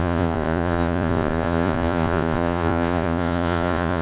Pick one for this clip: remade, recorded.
remade